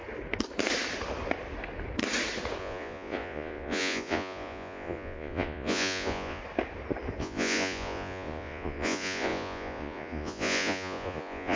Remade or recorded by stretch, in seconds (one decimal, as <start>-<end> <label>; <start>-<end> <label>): 0.0-2.6 recorded; 2.6-6.4 remade; 6.4-7.2 recorded; 7.2-11.6 remade